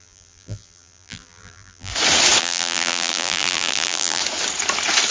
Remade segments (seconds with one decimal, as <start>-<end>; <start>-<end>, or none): 0.0-1.9; 2.4-4.2